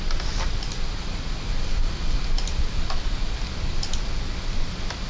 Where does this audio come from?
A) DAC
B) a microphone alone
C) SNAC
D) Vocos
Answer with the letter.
B